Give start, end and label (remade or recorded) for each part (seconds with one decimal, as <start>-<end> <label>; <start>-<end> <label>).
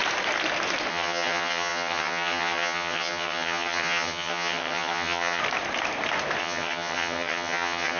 0.0-0.9 recorded; 0.9-5.4 remade; 5.4-6.4 recorded; 6.4-8.0 remade